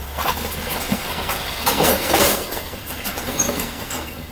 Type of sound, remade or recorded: remade